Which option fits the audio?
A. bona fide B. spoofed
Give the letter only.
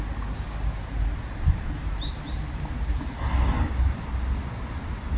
A